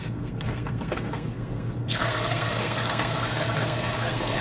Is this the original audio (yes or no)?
no